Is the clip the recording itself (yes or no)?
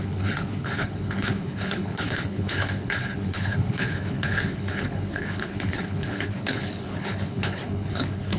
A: no